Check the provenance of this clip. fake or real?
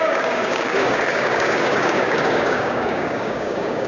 fake